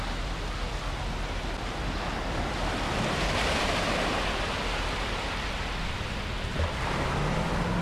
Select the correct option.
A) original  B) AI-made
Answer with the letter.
A